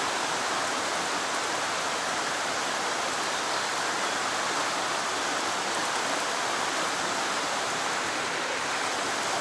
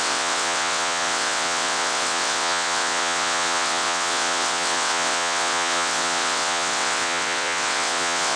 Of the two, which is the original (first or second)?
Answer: first